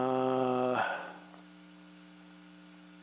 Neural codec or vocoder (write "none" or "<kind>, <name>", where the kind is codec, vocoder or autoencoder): none